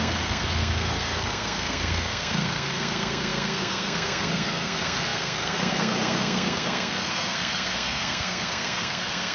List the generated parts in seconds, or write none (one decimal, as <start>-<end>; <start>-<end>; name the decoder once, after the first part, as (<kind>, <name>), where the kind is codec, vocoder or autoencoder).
0.0-9.3 (codec, SNAC)